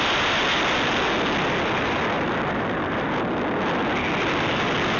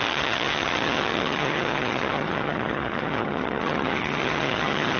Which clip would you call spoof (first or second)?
second